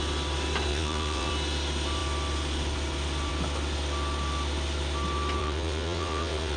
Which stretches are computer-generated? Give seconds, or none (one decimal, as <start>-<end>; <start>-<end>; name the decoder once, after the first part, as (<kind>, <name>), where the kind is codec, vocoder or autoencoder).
0.7-1.3 (vocoder, WaveNeXt); 5.4-6.6

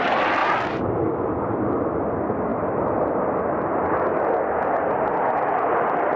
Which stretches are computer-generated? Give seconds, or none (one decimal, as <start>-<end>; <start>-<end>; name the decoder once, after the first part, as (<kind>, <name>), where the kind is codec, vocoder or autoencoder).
none

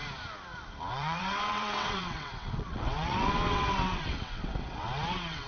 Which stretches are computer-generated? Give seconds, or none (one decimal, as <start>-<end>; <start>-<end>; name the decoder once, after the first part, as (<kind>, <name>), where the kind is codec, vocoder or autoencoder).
0.9-5.5 (vocoder, WaveNeXt)

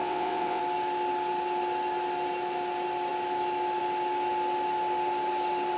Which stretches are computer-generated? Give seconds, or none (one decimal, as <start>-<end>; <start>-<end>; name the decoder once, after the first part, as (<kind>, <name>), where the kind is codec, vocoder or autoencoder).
0.0-0.6 (vocoder, WaveNeXt)

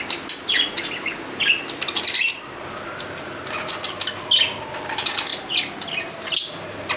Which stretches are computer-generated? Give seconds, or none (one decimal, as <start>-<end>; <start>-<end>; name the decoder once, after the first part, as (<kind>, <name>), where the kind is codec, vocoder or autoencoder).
none